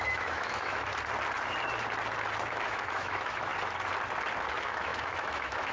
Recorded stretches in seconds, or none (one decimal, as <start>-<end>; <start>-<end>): 0.9-2.5; 3.5-4.5